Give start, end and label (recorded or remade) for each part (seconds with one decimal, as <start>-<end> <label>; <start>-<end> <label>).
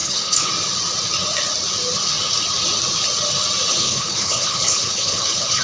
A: 0.0-0.5 remade; 0.5-3.7 recorded; 3.7-5.6 remade